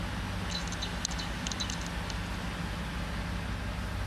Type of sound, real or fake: real